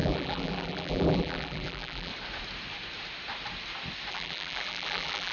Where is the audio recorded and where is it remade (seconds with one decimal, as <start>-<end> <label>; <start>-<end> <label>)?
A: 0.0-2.1 remade; 2.1-4.1 recorded; 4.1-5.3 remade